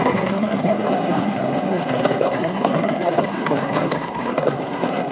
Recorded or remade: remade